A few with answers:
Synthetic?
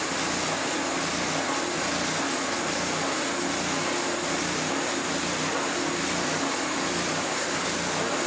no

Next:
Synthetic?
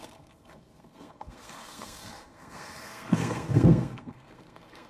yes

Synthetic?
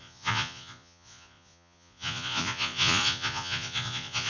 yes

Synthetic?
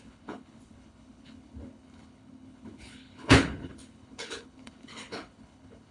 yes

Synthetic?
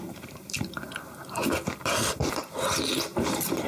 yes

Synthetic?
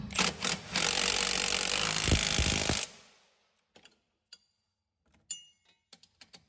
no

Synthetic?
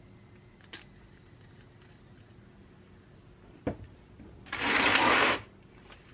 no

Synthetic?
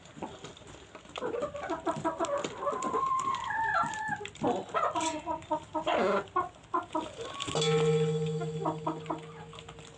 no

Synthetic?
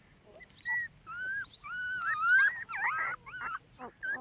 no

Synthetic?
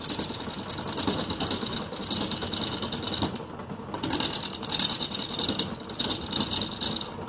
no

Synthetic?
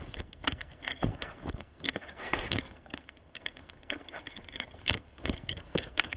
yes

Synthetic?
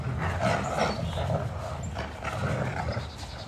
yes